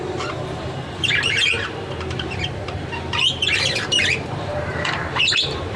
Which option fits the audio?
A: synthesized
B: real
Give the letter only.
A